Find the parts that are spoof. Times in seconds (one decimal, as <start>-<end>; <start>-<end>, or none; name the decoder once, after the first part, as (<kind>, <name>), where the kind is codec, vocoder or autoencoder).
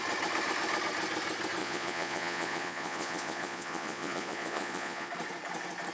1.6-5.1 (vocoder, Vocos)